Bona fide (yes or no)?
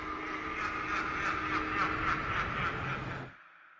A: yes